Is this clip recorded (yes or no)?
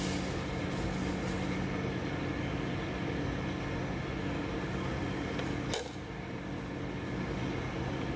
yes